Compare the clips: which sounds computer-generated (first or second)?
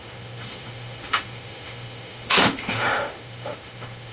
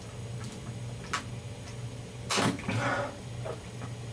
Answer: first